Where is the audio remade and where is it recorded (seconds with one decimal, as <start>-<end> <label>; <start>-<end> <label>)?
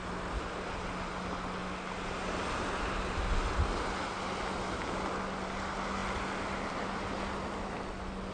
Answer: 0.0-8.3 recorded